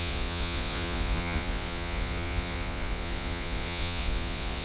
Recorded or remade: remade